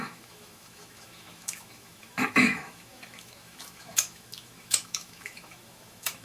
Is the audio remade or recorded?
remade